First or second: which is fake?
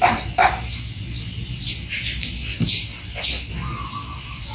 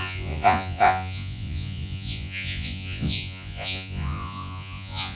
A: second